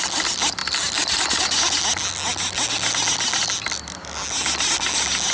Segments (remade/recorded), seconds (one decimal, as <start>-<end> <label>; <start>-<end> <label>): 0.0-5.3 recorded